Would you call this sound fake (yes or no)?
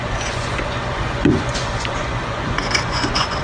yes